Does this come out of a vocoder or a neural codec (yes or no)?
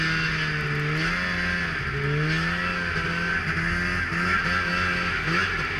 no